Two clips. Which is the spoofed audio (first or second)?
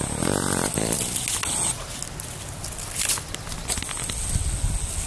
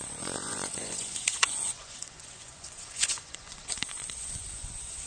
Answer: second